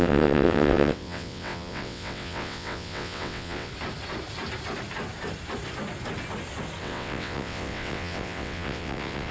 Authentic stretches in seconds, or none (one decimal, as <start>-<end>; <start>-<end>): 3.7-6.8